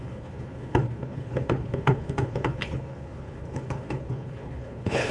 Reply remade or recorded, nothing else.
remade